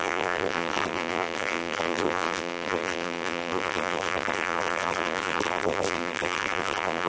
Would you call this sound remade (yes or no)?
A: yes